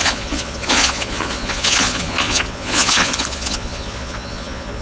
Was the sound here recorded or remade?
remade